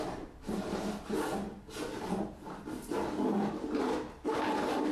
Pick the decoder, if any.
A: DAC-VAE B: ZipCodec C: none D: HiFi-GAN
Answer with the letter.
C